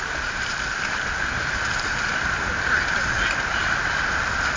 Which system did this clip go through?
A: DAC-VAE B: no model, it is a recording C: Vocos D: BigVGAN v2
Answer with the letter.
B